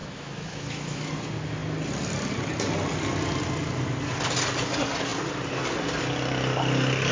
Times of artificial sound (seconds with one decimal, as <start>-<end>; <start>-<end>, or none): 0.0-1.1